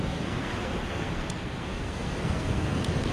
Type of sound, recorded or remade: remade